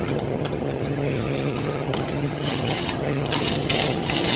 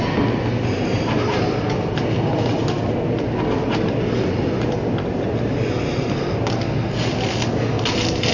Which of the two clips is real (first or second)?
second